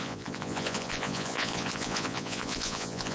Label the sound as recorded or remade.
remade